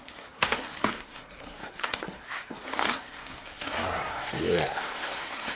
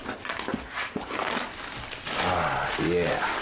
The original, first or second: second